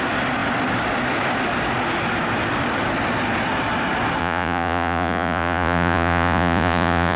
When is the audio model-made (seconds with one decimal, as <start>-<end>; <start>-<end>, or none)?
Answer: 4.2-7.2